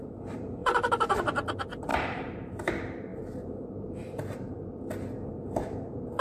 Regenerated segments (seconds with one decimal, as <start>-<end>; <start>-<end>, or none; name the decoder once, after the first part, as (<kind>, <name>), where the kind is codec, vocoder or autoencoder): 0.6-1.2 (vocoder, BigVGAN v2); 1.9-2.7; 3.1-4.5